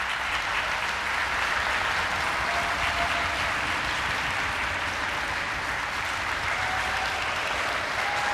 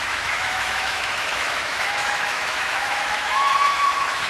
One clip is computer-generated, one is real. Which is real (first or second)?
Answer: first